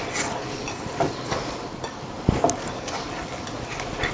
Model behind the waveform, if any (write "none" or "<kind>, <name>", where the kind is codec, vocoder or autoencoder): none